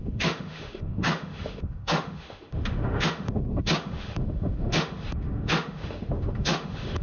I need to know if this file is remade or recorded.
remade